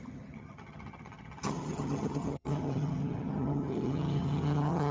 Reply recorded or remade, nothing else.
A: remade